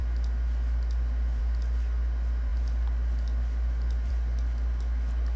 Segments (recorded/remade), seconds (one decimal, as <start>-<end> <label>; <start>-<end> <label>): 0.0-5.4 recorded